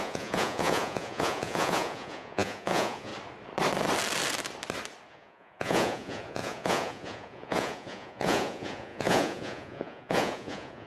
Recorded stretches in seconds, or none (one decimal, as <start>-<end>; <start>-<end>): 3.1-5.1